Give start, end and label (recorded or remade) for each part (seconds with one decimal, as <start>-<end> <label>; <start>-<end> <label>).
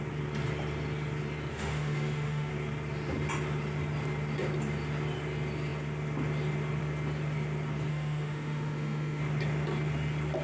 0.0-1.5 recorded; 1.5-2.5 remade; 2.5-7.9 recorded; 7.9-9.2 remade; 9.2-10.4 recorded